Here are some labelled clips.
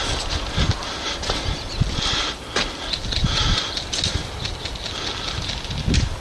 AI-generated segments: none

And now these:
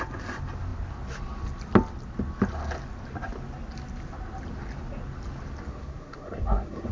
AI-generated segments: 5.7-6.9

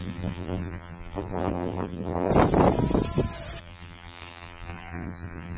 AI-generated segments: 0.0-2.3; 3.6-5.6

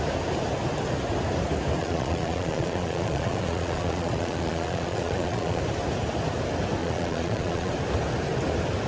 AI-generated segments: 1.8-5.6; 6.8-7.7

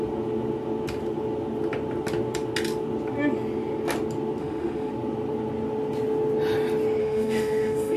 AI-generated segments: 4.4-4.9; 7.0-8.0

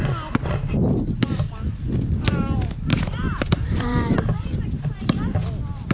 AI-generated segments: 2.9-5.2